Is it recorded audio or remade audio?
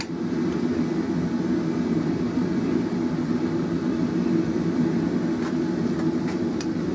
recorded